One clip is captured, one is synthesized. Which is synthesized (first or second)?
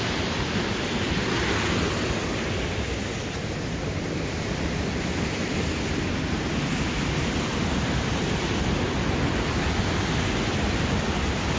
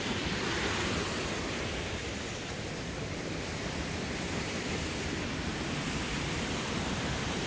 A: second